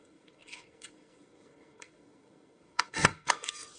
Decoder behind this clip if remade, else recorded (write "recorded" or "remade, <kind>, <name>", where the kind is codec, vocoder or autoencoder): remade, codec, SNAC